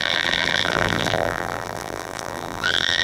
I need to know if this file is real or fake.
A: fake